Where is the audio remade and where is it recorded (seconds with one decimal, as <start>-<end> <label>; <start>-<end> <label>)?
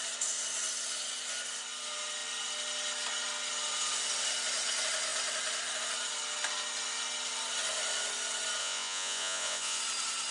0.0-8.6 recorded; 8.6-9.8 remade; 9.8-10.3 recorded